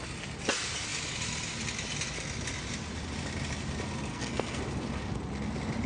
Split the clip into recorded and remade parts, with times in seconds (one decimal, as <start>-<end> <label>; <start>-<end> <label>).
0.0-4.1 recorded; 4.1-4.6 remade; 4.6-5.9 recorded